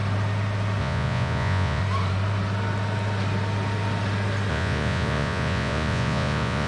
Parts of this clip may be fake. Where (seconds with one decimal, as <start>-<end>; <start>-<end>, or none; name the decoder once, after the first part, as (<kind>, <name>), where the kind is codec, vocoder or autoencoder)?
0.8-1.8 (vocoder, Vocos); 4.5-6.7